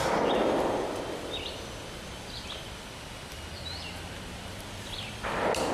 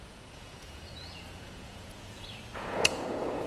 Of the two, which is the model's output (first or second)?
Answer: second